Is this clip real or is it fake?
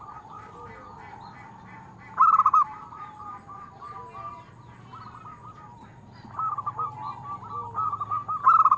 real